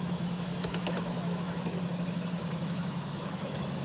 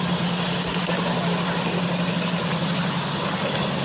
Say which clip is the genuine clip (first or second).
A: second